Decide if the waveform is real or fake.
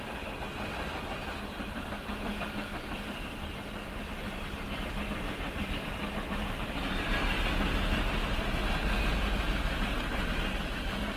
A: real